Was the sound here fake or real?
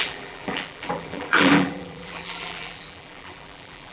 fake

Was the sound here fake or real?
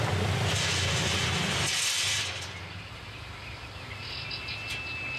real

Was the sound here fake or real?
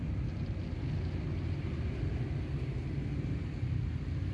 real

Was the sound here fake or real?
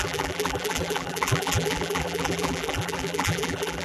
fake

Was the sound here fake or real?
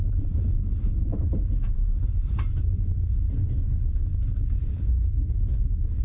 fake